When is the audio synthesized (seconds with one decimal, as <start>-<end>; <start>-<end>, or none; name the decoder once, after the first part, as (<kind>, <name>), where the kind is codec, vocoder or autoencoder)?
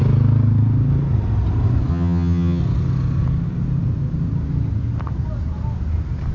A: 1.9-2.6 (vocoder, HiFi-GAN)